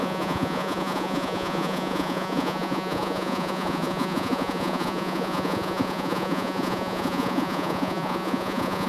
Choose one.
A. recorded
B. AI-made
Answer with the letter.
B